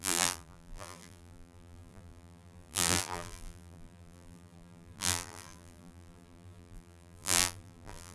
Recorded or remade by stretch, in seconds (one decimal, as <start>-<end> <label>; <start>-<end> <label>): 0.0-8.1 remade

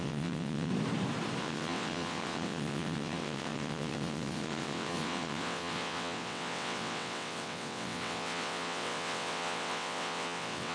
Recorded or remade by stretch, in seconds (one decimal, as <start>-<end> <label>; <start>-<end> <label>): 0.0-0.7 remade; 0.7-1.4 recorded; 1.4-10.7 remade

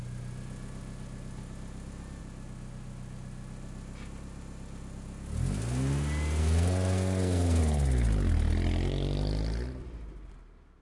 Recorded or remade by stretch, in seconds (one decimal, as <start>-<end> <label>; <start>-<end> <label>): 0.0-6.4 recorded; 6.4-7.6 remade; 7.6-10.8 recorded

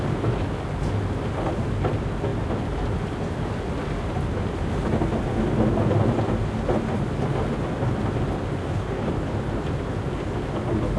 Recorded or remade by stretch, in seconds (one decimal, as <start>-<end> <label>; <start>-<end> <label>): 0.0-8.6 recorded; 8.6-9.1 remade; 9.1-11.0 recorded

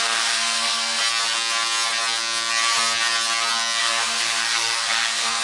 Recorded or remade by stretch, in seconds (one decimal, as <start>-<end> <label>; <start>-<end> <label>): 0.0-1.0 remade; 1.0-3.8 recorded; 3.8-5.4 remade

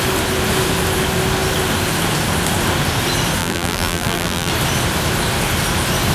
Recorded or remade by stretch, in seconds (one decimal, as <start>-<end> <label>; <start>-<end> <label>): 0.0-3.4 recorded; 3.4-4.5 remade; 4.5-6.1 recorded